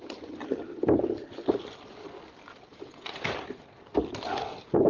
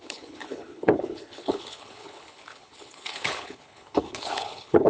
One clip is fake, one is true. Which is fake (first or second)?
second